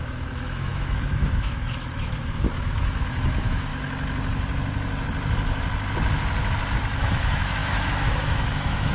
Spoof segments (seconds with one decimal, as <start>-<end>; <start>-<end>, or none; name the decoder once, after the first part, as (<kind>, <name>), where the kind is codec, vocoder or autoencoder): 0.0-3.7 (autoencoder, DAC-VAE); 7.0-8.9